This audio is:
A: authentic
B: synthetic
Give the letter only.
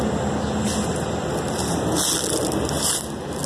A